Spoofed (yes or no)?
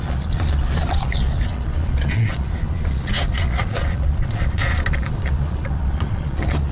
yes